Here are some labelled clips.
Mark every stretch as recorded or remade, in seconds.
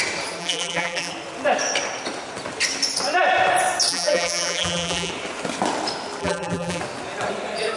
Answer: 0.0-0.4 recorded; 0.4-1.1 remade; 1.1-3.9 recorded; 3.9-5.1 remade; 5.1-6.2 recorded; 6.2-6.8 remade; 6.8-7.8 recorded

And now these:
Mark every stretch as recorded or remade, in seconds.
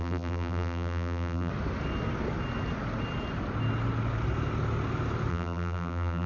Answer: 0.0-1.5 remade; 1.5-5.3 recorded; 5.3-6.3 remade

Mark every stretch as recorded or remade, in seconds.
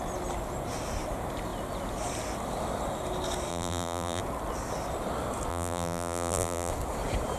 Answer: 0.0-3.5 recorded; 3.5-4.2 remade; 4.2-5.5 recorded; 5.5-6.7 remade; 6.7-7.4 recorded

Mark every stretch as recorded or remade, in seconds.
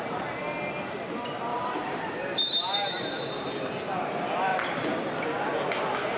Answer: 0.0-1.5 recorded; 1.5-3.6 remade; 3.6-4.5 recorded; 4.5-5.2 remade; 5.2-6.2 recorded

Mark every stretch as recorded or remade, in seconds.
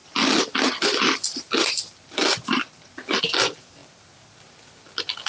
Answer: 0.0-5.3 recorded